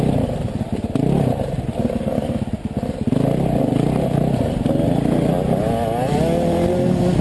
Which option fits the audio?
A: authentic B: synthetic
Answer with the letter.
A